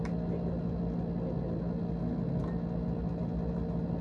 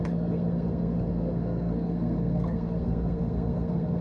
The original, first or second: first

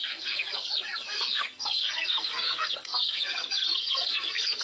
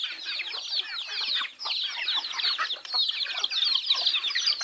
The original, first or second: second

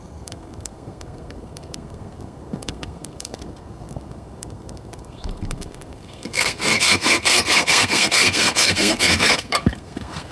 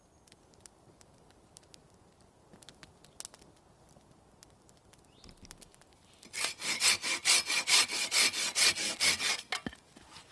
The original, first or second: second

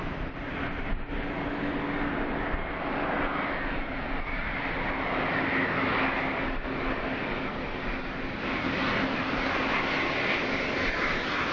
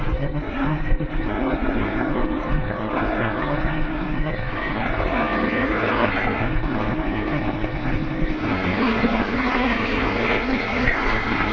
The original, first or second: first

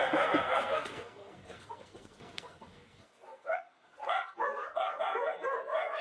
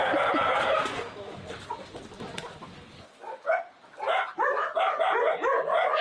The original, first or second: second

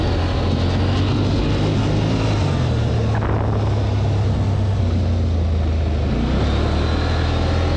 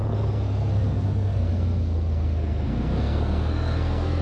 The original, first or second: first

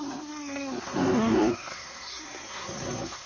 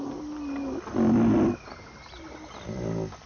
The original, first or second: second